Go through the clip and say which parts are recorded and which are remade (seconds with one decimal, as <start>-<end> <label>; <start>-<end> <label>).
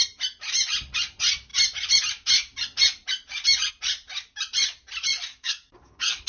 0.0-5.3 recorded; 5.3-6.3 remade